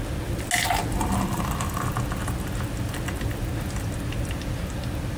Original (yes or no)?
yes